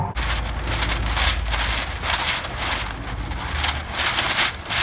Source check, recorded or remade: recorded